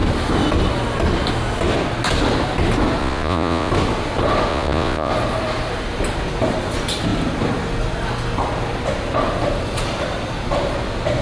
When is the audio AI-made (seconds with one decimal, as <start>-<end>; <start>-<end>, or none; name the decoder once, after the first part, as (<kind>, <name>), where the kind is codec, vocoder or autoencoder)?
3.0-3.7 (vocoder, Vocos); 4.5-5.1